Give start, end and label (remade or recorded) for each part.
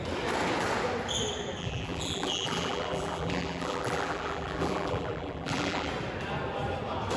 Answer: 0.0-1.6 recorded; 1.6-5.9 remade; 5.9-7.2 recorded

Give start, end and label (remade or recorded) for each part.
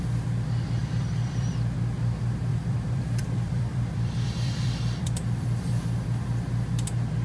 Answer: 0.0-0.8 recorded; 0.8-1.5 remade; 1.5-2.5 recorded; 2.5-5.8 remade; 5.8-7.2 recorded